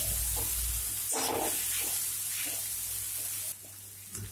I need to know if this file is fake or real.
real